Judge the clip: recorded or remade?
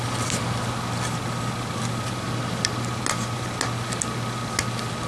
recorded